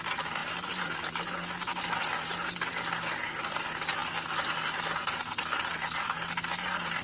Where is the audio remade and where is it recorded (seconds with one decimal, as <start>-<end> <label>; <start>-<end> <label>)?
0.0-7.0 recorded